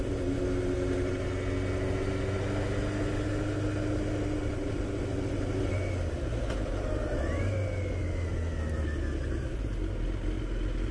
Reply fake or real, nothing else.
real